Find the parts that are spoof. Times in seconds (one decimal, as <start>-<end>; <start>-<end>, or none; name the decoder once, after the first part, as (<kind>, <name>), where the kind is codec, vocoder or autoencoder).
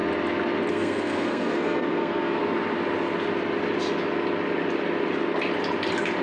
0.7-2.4 (codec, SNAC)